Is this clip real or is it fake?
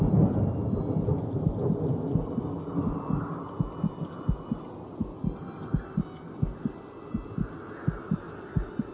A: real